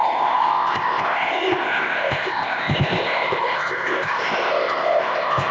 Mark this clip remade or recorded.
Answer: remade